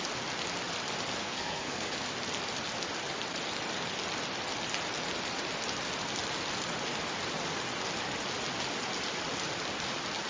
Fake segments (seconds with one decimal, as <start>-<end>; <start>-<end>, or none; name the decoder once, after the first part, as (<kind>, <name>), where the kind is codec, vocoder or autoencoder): 1.2-1.9 (codec, SNAC)